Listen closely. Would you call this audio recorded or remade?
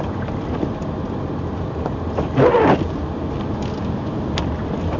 recorded